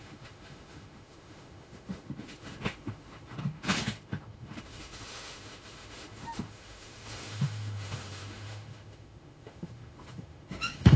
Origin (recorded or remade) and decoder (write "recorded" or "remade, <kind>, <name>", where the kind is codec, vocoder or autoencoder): remade, autoencoder, DAC-VAE